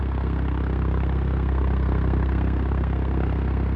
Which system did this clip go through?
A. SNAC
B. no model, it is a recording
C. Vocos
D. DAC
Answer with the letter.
A